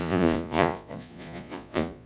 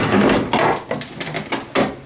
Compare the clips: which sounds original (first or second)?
second